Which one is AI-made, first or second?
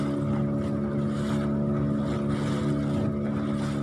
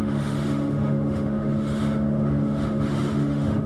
second